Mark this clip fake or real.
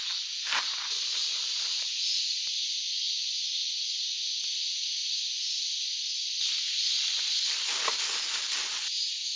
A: real